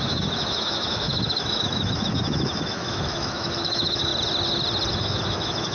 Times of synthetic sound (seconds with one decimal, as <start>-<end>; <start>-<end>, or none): 0.0-4.1; 4.9-5.7